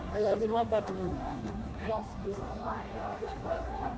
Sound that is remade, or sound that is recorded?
remade